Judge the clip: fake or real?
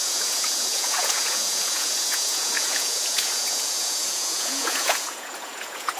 fake